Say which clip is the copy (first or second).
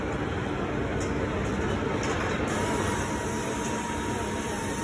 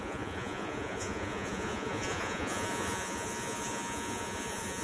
second